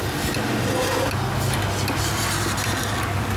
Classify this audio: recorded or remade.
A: recorded